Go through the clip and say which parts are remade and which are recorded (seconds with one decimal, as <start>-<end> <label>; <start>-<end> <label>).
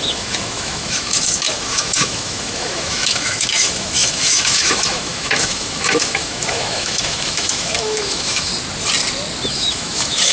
0.0-8.5 remade; 8.5-9.5 recorded; 9.5-10.3 remade